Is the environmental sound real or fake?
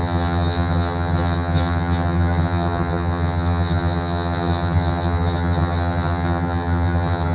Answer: fake